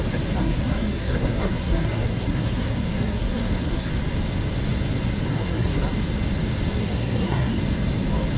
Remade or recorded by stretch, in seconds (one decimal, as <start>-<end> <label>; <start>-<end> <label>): 0.0-0.4 recorded; 0.4-3.9 remade; 3.9-5.3 recorded; 5.3-5.8 remade; 5.8-6.7 recorded; 6.7-7.6 remade; 7.6-8.4 recorded

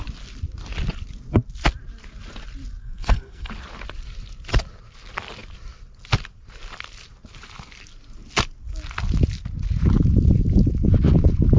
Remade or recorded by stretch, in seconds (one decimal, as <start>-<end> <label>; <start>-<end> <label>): 0.0-2.8 recorded; 2.8-3.5 remade; 3.5-11.6 recorded

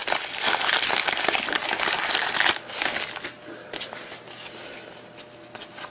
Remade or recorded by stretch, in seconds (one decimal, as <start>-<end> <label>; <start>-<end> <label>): 0.0-5.9 recorded